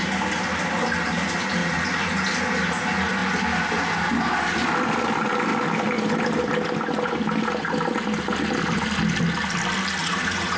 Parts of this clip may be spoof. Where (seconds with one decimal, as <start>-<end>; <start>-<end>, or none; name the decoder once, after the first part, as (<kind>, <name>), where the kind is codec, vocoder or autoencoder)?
1.6-2.1 (vocoder, Vocos); 10.0-10.6